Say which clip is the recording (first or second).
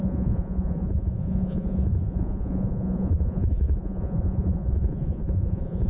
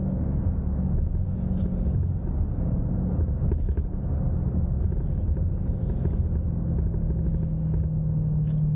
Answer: second